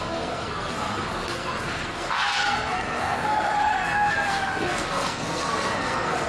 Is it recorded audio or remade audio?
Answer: remade